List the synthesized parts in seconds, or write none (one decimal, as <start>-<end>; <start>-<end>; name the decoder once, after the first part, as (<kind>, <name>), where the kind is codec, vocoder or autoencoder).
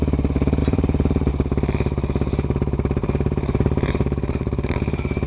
0.6-1.3 (vocoder, BigVGAN v2); 3.0-5.3